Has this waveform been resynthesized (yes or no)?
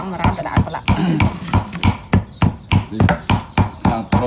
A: no